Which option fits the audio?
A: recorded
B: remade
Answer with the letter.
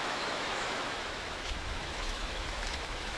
B